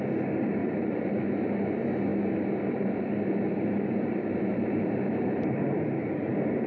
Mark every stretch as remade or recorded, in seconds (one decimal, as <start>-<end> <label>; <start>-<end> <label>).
0.0-0.6 recorded; 0.6-1.5 remade; 1.5-2.1 recorded; 2.1-6.1 remade; 6.1-6.7 recorded